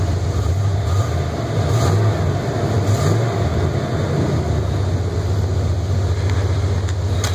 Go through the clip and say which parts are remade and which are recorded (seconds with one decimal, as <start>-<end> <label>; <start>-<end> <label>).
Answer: 0.0-7.3 recorded